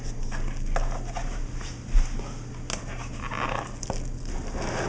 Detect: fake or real real